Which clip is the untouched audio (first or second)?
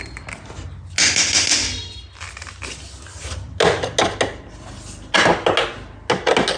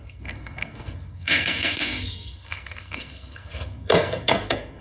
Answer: first